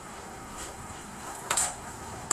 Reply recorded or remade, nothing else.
remade